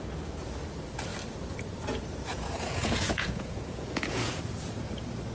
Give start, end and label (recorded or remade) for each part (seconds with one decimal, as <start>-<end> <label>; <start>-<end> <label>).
0.0-2.3 recorded; 2.3-4.4 remade; 4.4-5.3 recorded